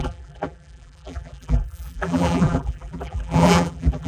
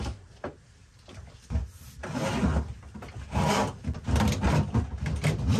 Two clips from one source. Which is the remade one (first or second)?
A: first